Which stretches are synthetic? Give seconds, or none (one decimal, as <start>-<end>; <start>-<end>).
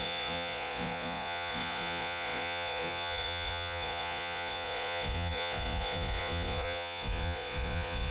0.0-8.1